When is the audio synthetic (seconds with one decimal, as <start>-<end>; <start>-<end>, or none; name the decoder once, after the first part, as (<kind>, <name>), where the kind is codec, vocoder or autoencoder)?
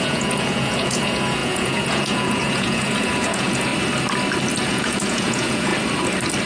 0.0-3.7 (vocoder, Vocos); 4.6-5.7